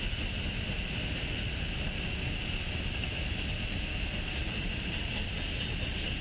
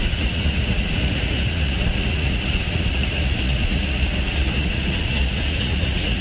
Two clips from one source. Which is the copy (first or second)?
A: second